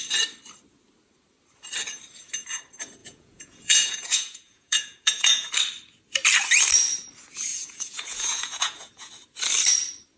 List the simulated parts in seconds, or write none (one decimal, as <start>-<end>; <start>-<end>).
3.0-5.5; 7.5-9.1